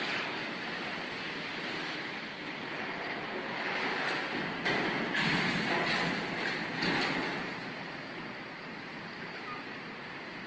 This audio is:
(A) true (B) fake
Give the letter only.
A